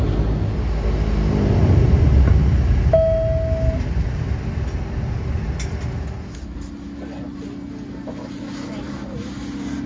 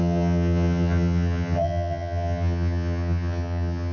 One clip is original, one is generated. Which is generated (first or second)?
second